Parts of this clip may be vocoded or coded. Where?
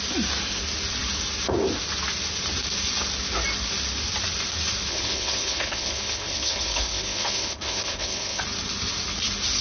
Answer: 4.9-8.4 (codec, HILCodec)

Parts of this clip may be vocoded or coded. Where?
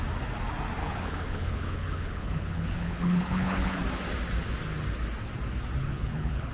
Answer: 0.8-3.8 (codec, HILCodec); 5.8-6.5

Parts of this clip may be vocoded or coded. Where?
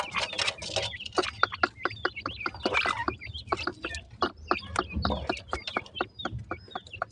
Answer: none